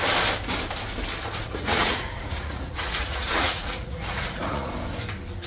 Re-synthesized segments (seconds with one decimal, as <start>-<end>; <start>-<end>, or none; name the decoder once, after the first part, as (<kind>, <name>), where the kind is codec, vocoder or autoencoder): 1.4-4.7 (vocoder, Vocos)